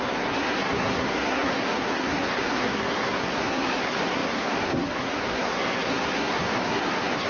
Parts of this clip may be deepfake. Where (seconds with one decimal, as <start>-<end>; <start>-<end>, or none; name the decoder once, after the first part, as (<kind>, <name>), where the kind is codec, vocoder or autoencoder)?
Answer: 0.0-7.3 (codec, SNAC)